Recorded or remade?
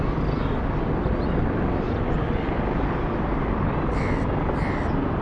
recorded